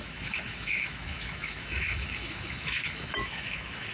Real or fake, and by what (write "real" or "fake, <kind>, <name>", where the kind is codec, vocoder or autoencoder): fake, autoencoder, DAC-VAE